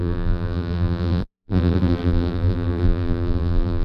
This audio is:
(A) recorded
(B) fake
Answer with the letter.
B